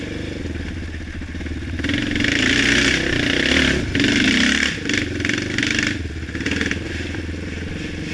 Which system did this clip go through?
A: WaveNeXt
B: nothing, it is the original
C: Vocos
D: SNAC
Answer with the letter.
B